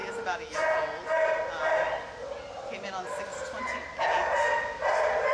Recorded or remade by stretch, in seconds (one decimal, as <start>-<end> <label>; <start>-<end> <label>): 0.0-5.3 recorded